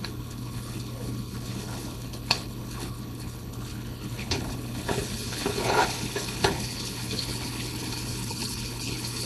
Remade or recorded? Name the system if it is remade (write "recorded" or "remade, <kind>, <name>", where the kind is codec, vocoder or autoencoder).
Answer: remade, codec, HILCodec